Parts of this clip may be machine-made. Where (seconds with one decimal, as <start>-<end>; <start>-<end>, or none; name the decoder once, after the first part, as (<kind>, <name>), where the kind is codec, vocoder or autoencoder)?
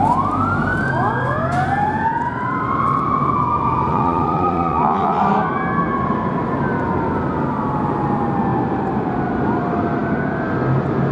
3.9-5.2 (vocoder, Vocos)